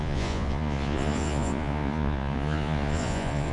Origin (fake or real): fake